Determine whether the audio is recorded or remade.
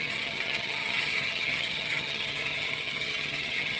remade